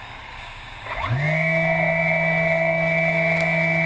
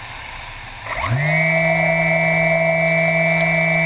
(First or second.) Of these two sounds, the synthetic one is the first